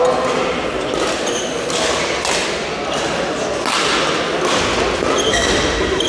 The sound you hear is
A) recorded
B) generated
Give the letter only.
A